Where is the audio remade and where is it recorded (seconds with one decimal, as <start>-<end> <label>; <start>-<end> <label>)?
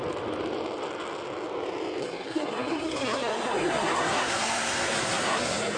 0.0-2.0 recorded; 2.0-5.8 remade